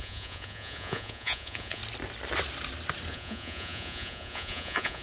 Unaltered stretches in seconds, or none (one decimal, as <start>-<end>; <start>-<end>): 1.8-3.1